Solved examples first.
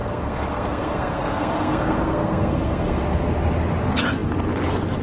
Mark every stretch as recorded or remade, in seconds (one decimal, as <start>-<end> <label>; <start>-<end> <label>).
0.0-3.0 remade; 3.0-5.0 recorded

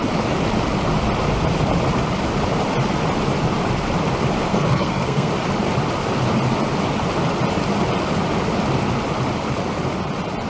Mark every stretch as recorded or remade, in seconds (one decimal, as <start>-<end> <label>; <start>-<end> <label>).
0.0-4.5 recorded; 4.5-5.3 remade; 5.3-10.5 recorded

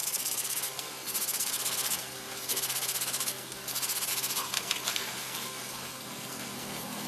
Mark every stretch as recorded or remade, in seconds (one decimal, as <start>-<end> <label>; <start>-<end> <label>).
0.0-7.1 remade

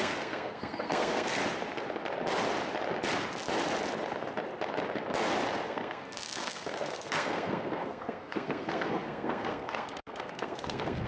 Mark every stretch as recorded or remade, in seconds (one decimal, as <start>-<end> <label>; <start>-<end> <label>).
0.0-1.4 remade; 1.4-5.7 recorded; 5.7-11.1 remade

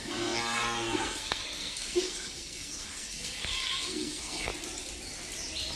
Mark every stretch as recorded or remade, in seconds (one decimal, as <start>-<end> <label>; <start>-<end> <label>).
0.0-4.5 remade; 4.5-5.8 recorded

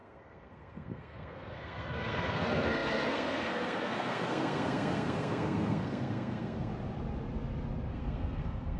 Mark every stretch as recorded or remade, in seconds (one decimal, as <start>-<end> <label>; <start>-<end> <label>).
0.0-6.7 remade; 6.7-7.9 recorded; 7.9-8.8 remade

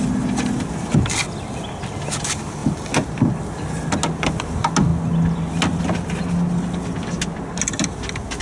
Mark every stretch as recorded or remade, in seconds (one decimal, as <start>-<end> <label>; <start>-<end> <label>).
0.0-8.4 recorded

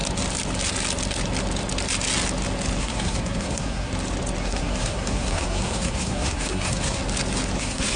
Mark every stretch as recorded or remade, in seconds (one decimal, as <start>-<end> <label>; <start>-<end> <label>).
0.0-2.8 recorded; 2.8-3.9 remade; 3.9-4.4 recorded; 4.4-7.0 remade; 7.0-7.6 recorded; 7.6-8.0 remade